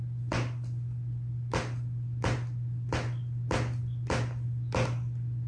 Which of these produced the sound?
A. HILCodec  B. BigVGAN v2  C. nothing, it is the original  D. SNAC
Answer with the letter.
C